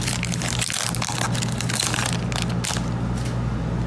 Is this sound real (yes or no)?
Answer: yes